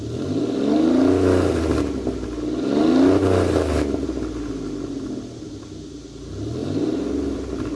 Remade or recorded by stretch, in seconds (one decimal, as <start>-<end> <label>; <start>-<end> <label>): 0.0-6.6 recorded; 6.6-7.8 remade